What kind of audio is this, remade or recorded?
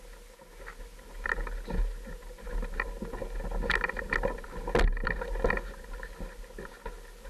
recorded